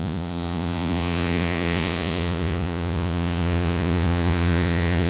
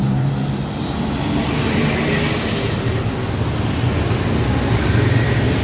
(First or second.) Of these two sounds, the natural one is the second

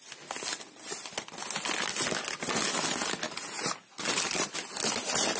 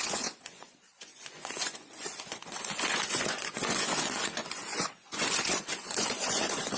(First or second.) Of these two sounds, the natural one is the first